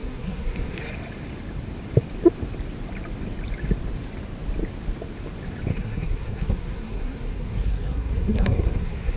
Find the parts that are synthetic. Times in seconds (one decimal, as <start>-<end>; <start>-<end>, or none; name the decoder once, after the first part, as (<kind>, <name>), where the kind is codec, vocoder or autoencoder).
0.0-0.9 (codec, SNAC); 5.7-9.2